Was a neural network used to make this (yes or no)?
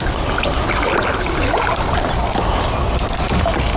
no